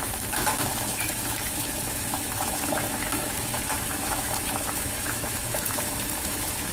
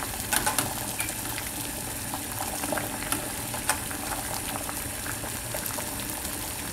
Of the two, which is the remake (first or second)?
first